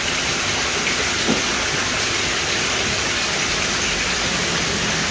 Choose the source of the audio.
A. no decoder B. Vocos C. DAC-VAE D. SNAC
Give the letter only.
A